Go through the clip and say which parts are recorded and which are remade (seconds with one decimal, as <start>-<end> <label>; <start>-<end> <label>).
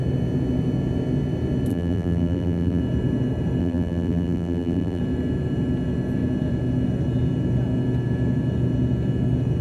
0.0-1.7 recorded; 1.7-2.8 remade; 2.8-3.6 recorded; 3.6-5.0 remade; 5.0-9.6 recorded